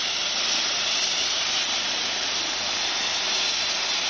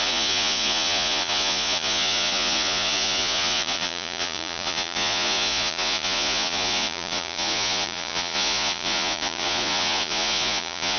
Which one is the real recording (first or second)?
first